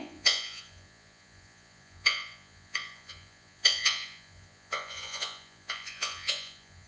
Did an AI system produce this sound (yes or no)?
yes